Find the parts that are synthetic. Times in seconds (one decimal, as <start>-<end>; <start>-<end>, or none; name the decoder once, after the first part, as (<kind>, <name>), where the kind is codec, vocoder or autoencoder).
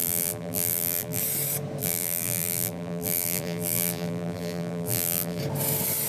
0.0-1.2 (vocoder, BigVGAN v2); 1.8-5.4